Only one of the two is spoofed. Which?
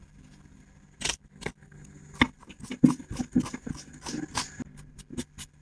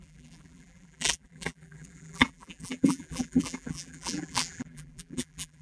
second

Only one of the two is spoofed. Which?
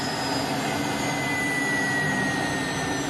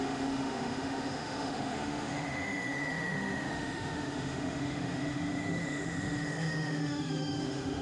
second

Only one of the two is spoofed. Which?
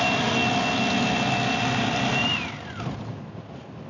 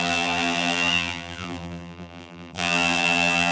second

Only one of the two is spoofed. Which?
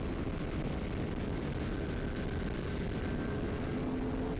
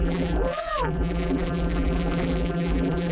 second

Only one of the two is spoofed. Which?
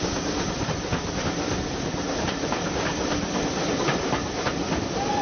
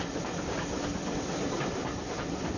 first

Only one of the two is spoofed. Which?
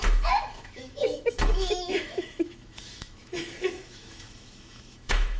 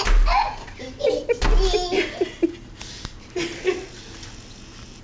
first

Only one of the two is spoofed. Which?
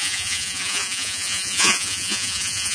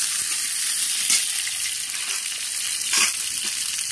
first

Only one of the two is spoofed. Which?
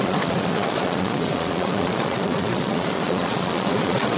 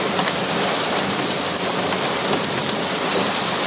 first